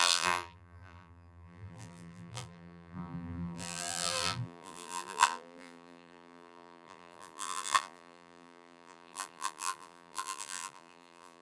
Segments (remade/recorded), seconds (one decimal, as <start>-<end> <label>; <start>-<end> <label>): 0.0-11.4 remade